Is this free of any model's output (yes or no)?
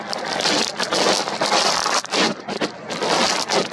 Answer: yes